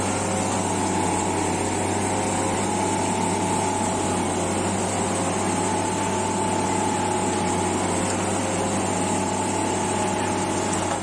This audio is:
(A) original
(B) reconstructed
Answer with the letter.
A